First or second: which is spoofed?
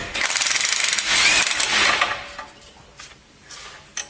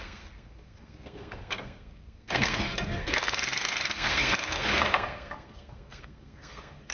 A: second